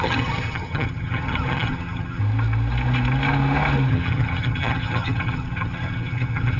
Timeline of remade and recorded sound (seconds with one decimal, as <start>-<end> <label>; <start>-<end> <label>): 0.0-2.2 remade; 2.2-3.9 recorded; 3.9-6.6 remade

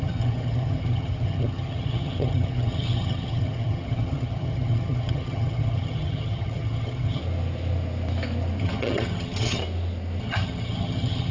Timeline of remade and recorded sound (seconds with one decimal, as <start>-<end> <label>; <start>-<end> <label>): 0.0-7.2 remade; 7.2-8.6 recorded; 8.6-9.6 remade; 9.6-10.2 recorded; 10.2-11.3 remade

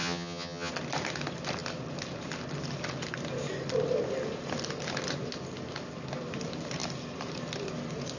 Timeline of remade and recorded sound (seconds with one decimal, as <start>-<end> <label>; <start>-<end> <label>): 0.0-0.7 remade; 0.7-8.2 recorded

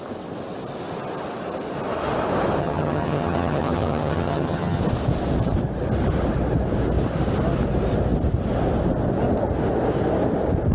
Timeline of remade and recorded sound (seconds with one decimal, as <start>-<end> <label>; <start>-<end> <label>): 0.0-2.6 recorded; 2.6-4.8 remade; 4.8-10.7 recorded